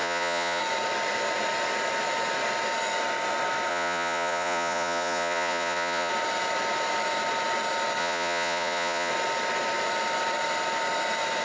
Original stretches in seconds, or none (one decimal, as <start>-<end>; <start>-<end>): 0.6-3.7; 6.1-8.0; 9.1-11.4